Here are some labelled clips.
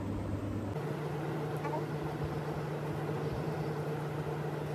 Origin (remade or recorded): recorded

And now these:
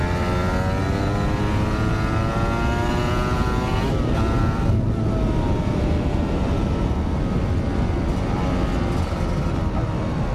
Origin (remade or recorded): recorded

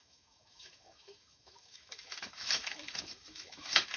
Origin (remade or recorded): remade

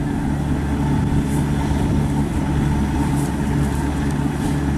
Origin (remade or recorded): recorded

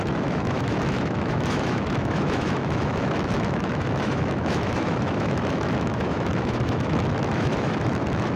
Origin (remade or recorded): remade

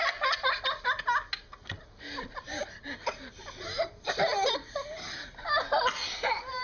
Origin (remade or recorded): recorded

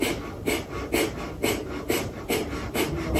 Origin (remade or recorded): recorded